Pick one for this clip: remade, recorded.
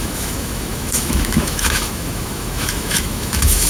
remade